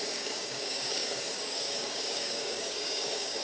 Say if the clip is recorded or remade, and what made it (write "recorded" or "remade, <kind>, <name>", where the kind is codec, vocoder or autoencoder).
remade, codec, DAC